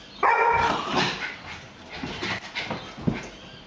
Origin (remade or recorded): remade